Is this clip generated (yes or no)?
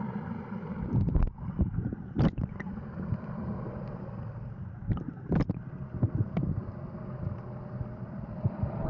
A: yes